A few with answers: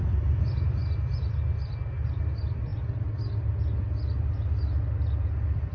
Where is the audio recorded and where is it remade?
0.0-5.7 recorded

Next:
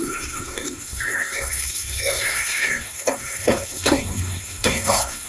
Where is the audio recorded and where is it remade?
0.0-5.3 remade

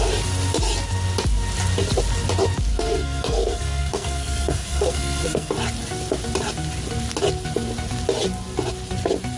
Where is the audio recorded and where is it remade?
0.0-2.7 recorded; 2.7-5.5 remade; 5.5-9.4 recorded

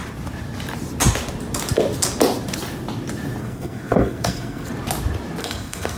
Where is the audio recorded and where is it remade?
0.0-3.4 recorded; 3.4-4.7 remade; 4.7-5.4 recorded; 5.4-6.0 remade

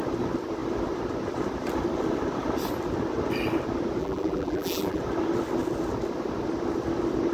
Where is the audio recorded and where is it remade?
0.0-4.0 recorded; 4.0-5.0 remade; 5.0-7.3 recorded

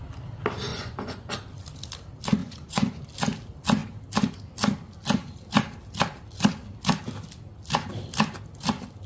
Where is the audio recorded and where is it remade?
0.0-0.7 recorded; 0.7-1.3 remade; 1.3-2.4 recorded; 2.4-3.0 remade; 3.0-9.1 recorded

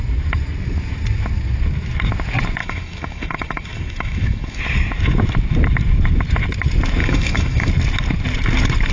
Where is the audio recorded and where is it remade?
0.0-2.6 recorded; 2.6-4.6 remade; 4.6-7.0 recorded; 7.0-7.7 remade; 7.7-8.9 recorded